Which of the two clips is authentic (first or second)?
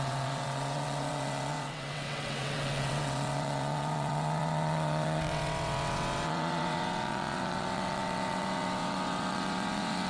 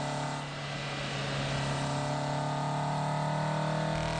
second